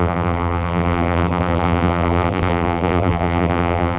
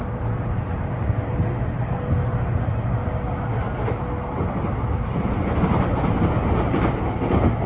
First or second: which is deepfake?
first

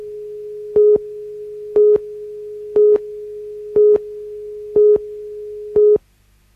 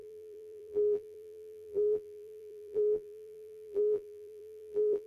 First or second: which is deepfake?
second